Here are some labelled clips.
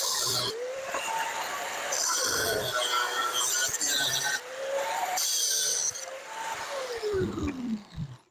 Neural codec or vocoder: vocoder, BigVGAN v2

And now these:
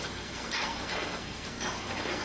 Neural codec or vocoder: codec, SNAC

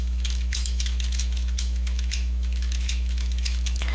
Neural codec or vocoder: autoencoder, DAC-VAE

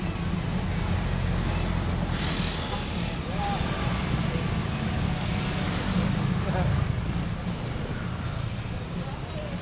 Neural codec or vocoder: none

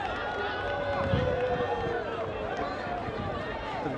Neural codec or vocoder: none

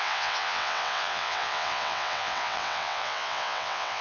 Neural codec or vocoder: vocoder, WaveNeXt